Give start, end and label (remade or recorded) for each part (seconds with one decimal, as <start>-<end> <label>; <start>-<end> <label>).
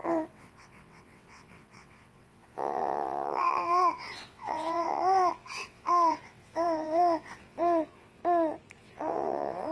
0.0-8.2 remade; 8.2-8.8 recorded; 8.8-9.7 remade